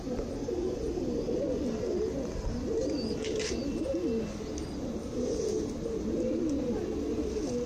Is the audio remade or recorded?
recorded